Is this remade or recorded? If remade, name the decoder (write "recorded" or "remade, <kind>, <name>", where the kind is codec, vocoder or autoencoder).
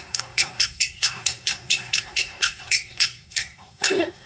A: remade, codec, SNAC